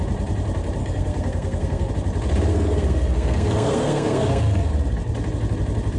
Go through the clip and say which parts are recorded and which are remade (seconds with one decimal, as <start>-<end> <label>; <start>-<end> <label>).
0.0-0.8 recorded; 0.8-1.9 remade; 1.9-2.5 recorded; 2.5-4.7 remade; 4.7-6.0 recorded